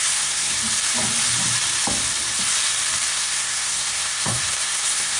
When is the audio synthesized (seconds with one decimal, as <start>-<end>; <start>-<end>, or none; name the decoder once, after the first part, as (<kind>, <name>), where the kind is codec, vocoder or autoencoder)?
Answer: 0.0-0.5 (codec, SNAC); 3.1-5.2